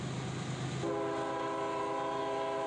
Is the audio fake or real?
real